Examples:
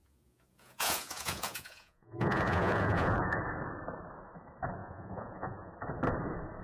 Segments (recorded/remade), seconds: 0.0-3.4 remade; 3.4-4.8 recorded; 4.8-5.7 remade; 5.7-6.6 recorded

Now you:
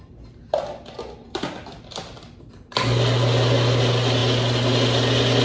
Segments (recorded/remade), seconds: 0.0-5.4 recorded

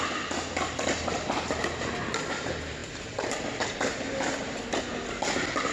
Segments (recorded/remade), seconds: 0.0-5.7 recorded

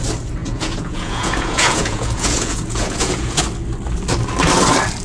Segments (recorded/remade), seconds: 0.0-0.4 recorded; 0.4-3.4 remade; 3.4-5.0 recorded

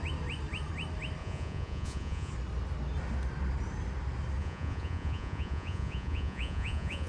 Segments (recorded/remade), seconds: 0.0-1.2 recorded; 1.2-2.3 remade; 2.3-4.4 recorded; 4.4-7.1 remade

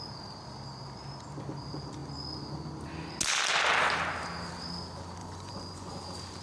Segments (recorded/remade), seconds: 0.0-5.2 recorded; 5.2-5.9 remade; 5.9-6.4 recorded

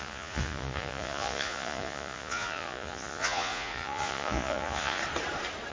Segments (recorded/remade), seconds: 0.0-5.0 remade; 5.0-5.7 recorded